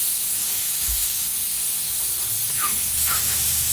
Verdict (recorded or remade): remade